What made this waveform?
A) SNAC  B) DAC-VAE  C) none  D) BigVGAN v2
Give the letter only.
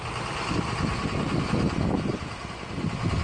C